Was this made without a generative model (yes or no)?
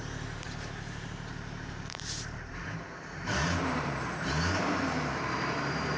no